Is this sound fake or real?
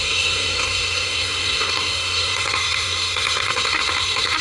fake